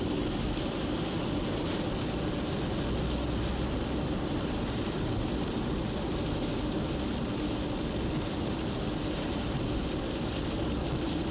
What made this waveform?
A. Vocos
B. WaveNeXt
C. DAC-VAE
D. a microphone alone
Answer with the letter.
D